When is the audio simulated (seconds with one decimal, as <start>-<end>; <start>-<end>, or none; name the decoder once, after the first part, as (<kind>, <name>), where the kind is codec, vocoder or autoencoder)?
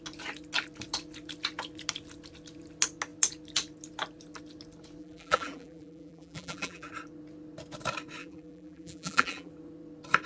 5.0-6.9 (vocoder, BigVGAN v2); 8.2-9.5